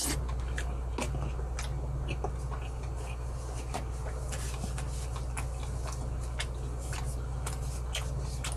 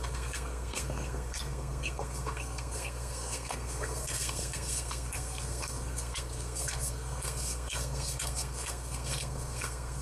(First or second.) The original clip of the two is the first